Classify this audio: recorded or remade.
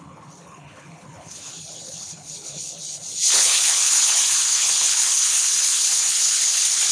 remade